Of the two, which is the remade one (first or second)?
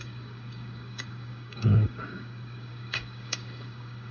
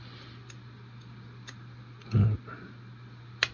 first